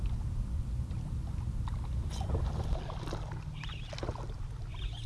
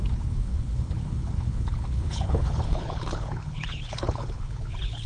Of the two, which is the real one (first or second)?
first